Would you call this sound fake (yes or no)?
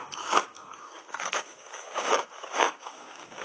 yes